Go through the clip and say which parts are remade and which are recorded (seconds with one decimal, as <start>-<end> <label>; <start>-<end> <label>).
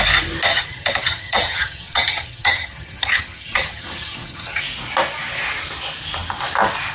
0.0-0.5 recorded; 0.5-4.6 remade; 4.6-6.9 recorded